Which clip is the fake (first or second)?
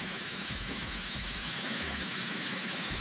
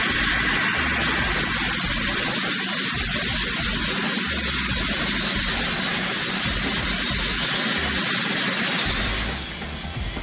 first